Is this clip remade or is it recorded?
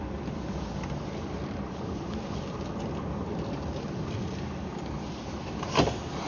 recorded